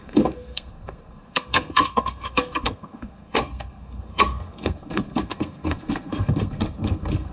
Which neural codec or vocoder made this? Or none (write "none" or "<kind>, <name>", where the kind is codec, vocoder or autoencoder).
codec, SNAC